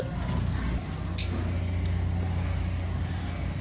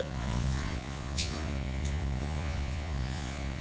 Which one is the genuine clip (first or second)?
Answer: first